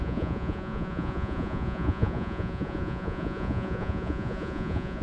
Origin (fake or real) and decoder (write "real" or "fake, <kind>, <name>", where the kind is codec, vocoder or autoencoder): fake, vocoder, Vocos